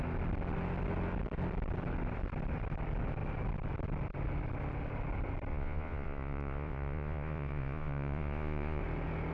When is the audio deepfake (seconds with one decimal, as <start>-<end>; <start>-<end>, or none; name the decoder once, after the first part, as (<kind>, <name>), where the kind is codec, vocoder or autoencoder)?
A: 5.5-8.8 (vocoder, Vocos)